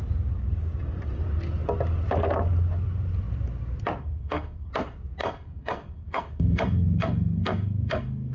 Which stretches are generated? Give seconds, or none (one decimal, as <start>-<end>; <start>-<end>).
4.0-4.7; 5.2-8.3